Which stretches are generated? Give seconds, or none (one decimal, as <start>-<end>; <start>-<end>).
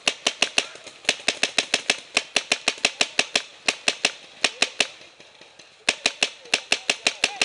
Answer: none